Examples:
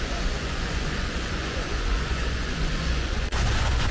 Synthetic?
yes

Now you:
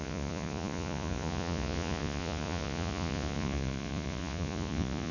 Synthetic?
yes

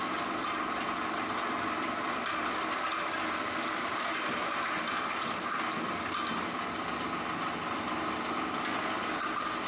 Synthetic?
no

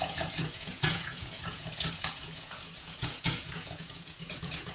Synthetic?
yes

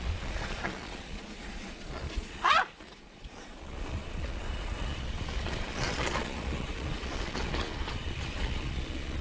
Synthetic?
yes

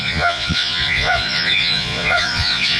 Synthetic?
yes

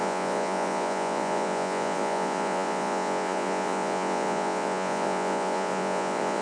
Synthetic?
yes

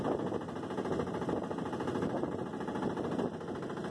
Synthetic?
no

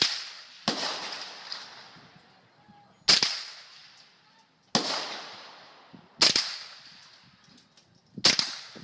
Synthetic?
no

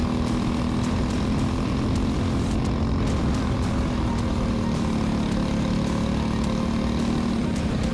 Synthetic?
no